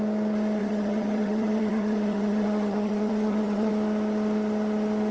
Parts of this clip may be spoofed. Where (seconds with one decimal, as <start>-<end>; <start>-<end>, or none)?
0.6-3.7